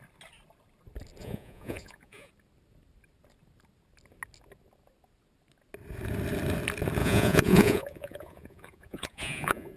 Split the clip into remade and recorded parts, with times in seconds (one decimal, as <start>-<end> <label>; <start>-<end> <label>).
0.0-1.2 recorded; 1.2-2.3 remade; 2.3-7.0 recorded; 7.0-9.8 remade